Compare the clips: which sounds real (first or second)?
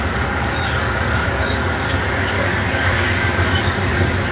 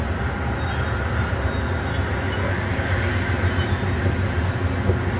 second